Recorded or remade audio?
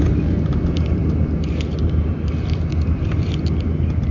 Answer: recorded